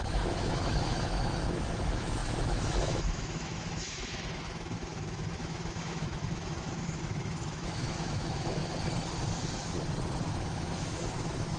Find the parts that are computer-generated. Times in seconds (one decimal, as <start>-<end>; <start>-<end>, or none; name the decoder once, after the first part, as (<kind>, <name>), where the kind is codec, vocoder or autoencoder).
0.0-8.6 (autoencoder, DAC-VAE); 10.3-11.6